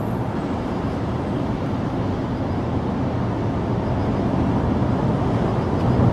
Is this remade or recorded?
recorded